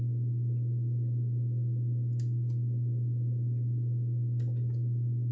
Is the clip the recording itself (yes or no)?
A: yes